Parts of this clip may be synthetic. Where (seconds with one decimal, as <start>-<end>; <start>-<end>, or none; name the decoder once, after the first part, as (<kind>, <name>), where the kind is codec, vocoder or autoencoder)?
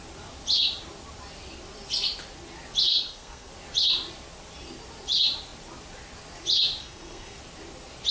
2.9-3.5 (codec, SNAC); 6.8-7.4